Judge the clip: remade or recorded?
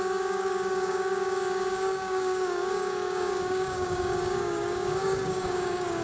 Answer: remade